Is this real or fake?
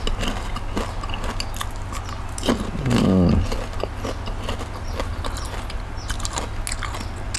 real